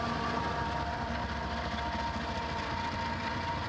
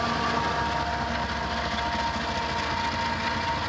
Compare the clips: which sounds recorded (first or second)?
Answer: second